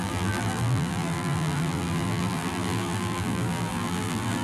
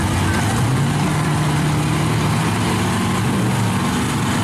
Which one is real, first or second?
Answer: second